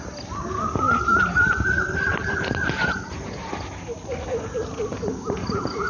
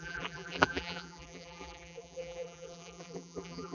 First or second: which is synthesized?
second